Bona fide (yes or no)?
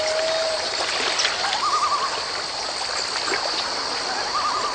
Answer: yes